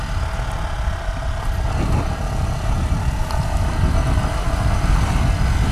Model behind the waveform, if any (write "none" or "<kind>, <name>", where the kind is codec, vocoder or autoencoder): none